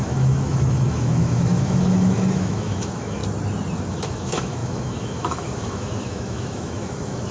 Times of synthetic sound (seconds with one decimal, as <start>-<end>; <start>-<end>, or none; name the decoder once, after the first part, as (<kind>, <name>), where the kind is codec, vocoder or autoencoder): 0.0-3.2 (autoencoder, DAC-VAE); 3.9-7.3